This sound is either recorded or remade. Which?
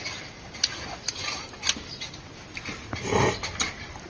recorded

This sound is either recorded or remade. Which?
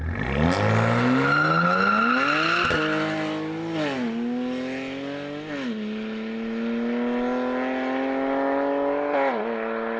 recorded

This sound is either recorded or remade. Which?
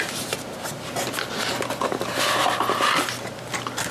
recorded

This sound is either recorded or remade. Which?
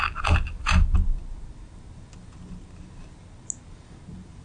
recorded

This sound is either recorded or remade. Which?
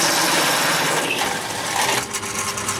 recorded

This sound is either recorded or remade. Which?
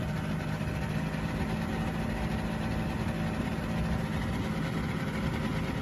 recorded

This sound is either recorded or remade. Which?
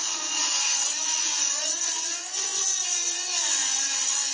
remade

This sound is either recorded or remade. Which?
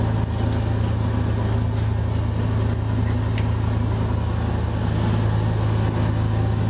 recorded